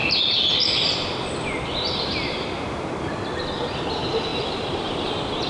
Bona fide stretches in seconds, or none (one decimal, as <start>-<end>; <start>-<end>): 0.0-4.3; 5.0-5.5